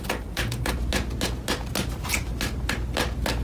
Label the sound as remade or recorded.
recorded